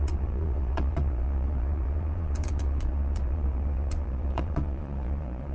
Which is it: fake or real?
fake